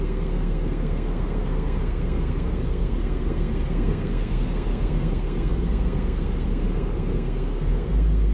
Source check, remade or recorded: remade